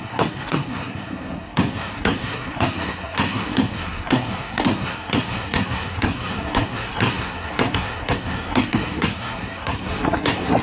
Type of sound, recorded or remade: remade